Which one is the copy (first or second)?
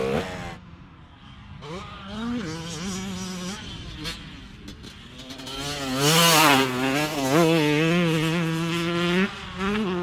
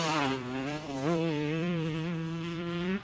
second